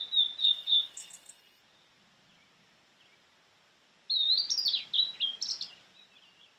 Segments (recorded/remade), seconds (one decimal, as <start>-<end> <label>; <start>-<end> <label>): 0.0-0.4 recorded; 0.4-1.6 remade; 1.6-6.6 recorded